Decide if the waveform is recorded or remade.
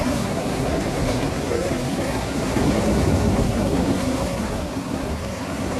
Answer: remade